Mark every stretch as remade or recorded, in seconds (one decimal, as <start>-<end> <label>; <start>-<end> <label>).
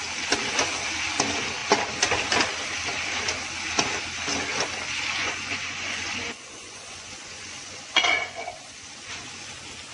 0.0-5.2 recorded; 5.2-9.5 remade; 9.5-9.9 recorded